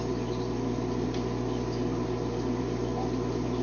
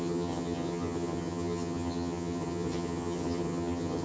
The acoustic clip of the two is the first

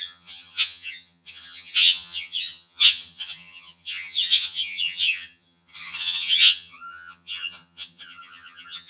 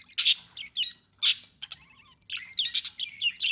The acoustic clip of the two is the second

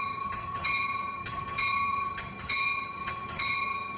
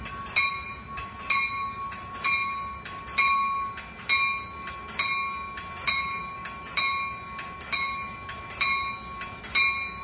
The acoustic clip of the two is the second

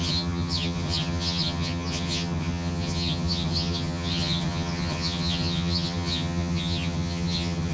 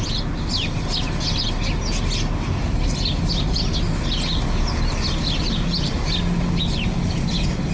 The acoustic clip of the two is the second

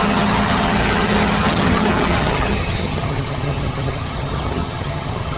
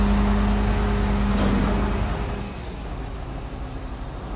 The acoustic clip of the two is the second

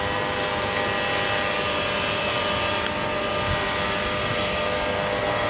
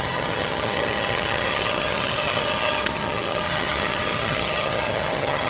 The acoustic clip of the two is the first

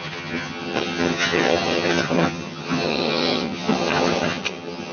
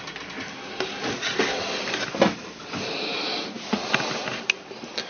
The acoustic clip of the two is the second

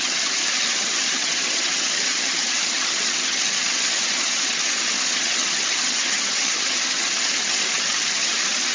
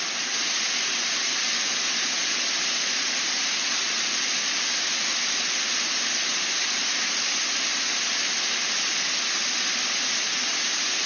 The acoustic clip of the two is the second